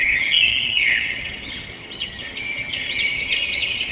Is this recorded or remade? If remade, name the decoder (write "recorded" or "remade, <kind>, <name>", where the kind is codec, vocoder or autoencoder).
remade, vocoder, HiFi-GAN